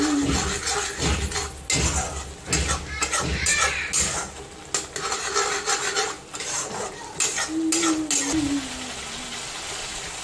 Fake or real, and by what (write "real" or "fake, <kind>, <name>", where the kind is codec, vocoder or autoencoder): real